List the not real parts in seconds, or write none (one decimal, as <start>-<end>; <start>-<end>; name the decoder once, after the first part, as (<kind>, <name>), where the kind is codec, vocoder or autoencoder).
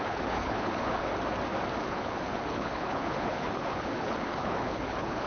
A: 0.0-1.1 (codec, HILCodec); 1.8-5.3